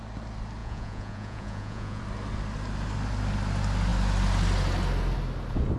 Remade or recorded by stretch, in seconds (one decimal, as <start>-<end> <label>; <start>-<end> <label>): 0.0-0.6 recorded; 0.6-2.0 remade; 2.0-5.8 recorded